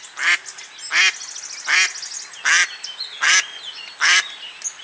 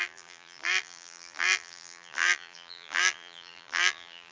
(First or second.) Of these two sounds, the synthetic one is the second